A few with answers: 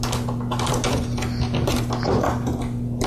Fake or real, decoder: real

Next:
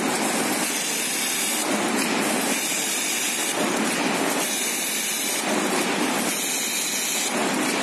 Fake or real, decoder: real